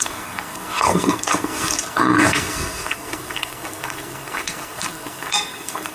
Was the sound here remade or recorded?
remade